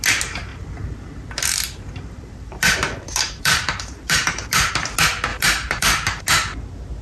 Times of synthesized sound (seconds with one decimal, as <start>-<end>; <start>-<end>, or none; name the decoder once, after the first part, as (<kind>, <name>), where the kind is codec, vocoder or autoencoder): 0.5-4.7 (vocoder, BigVGAN v2); 5.3-6.2